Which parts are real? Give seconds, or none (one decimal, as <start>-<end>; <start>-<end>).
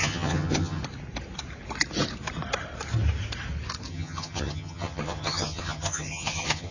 0.8-3.9